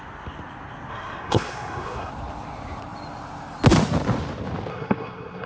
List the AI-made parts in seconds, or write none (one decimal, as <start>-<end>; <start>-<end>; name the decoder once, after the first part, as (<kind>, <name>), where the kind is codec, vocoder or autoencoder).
0.9-2.1 (codec, SNAC); 4.7-5.5